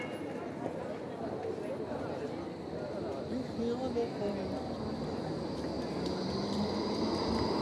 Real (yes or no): yes